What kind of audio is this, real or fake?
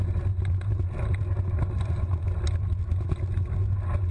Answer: real